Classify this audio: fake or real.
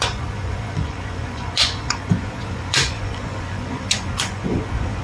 fake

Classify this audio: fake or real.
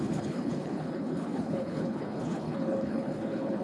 fake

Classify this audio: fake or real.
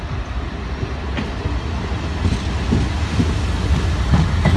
real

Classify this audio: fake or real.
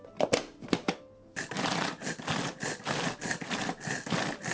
real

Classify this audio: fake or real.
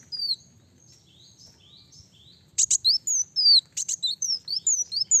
real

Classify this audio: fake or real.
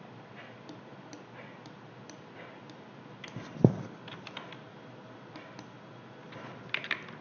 real